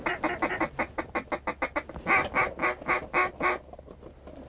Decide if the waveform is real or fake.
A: real